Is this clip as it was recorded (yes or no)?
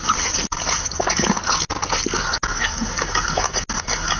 yes